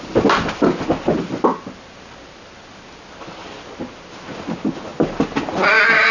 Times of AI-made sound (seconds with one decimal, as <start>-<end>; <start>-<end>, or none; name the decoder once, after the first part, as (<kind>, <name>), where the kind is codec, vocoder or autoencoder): none

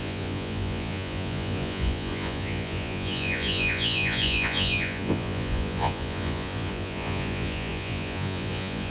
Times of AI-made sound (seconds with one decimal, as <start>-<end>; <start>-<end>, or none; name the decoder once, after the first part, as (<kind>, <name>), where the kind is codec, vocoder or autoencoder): 0.0-8.9 (vocoder, Vocos)

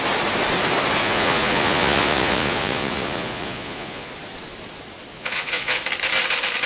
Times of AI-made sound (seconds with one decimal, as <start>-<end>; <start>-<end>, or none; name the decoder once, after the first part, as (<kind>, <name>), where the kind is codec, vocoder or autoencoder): 1.0-4.1 (vocoder, Vocos); 5.1-5.8

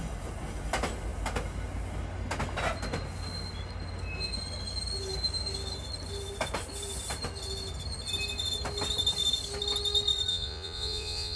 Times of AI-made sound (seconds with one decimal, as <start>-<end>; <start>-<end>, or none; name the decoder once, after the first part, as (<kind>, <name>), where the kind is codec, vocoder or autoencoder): 10.3-11.4 (vocoder, Vocos)

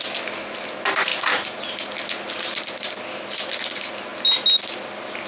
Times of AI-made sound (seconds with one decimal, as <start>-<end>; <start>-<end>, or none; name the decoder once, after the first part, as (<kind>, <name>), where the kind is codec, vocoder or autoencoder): none

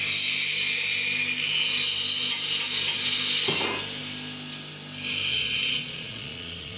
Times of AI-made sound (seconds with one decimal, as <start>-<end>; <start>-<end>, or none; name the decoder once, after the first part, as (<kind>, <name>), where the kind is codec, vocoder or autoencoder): 5.3-6.8 (vocoder, Vocos)